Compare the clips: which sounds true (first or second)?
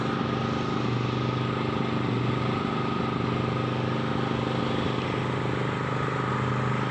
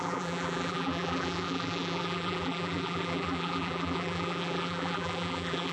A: first